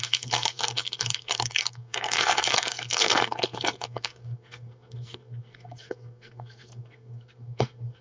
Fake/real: fake